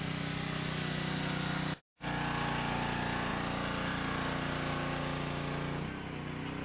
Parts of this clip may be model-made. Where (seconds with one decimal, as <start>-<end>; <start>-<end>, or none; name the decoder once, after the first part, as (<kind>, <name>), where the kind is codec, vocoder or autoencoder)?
none